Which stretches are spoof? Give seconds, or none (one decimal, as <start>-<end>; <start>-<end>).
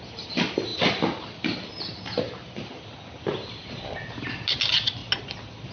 0.7-2.2